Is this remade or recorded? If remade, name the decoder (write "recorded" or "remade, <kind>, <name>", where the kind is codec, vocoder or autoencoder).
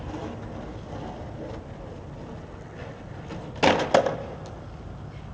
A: recorded